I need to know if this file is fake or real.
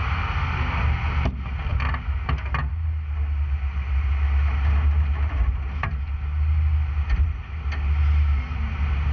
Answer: real